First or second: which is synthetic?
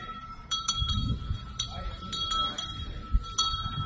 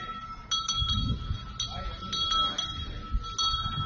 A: first